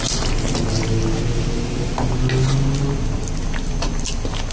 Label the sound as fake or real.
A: real